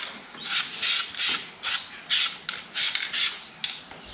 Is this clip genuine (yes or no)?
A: yes